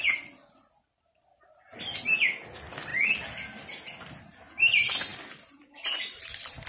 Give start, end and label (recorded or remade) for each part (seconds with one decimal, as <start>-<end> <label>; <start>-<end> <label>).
0.0-5.1 recorded; 5.1-6.3 remade; 6.3-6.7 recorded